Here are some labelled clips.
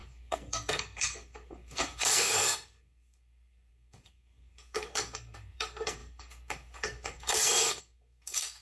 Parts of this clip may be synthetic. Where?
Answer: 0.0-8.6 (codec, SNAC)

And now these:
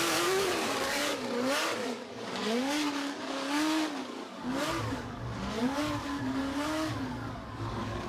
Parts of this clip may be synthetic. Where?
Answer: 0.0-8.1 (codec, DAC)